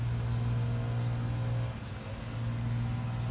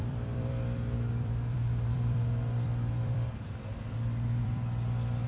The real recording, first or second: first